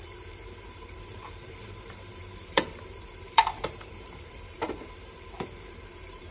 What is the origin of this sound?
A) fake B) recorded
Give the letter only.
A